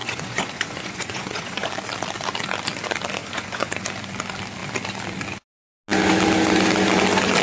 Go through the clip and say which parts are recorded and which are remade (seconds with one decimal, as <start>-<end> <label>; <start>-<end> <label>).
0.0-1.7 remade; 1.7-3.2 recorded; 3.2-3.7 remade; 3.7-7.4 recorded